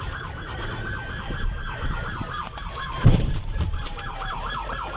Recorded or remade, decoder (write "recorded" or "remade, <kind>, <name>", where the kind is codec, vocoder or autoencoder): remade, vocoder, BigVGAN v2